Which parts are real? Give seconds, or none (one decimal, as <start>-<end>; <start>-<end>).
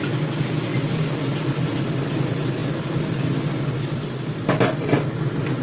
0.0-5.6